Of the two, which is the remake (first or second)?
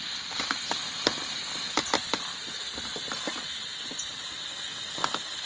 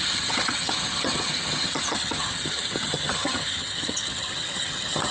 second